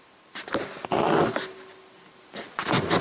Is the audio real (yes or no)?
yes